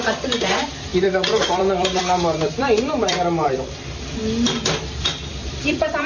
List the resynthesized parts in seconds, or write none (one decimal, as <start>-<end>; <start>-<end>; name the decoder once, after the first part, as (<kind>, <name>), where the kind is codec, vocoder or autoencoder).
0.0-4.2 (vocoder, BigVGAN v2); 5.0-6.1